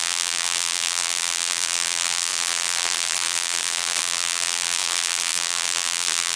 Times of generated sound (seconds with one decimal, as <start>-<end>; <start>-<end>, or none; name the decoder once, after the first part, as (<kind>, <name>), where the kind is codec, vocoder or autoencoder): 0.0-6.4 (vocoder, BigVGAN v2)